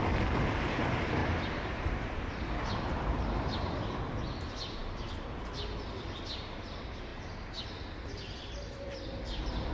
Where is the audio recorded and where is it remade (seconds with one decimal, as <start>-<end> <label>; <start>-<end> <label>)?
0.0-1.2 recorded; 1.2-2.3 remade; 2.3-7.1 recorded; 7.1-9.7 remade